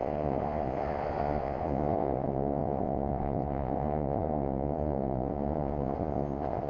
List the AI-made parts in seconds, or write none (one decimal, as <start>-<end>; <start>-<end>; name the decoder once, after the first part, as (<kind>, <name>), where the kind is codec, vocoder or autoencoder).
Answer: 0.0-6.7 (vocoder, Vocos)